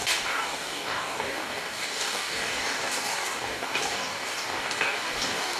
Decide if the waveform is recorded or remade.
remade